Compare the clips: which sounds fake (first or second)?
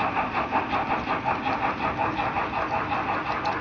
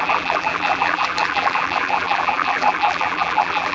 second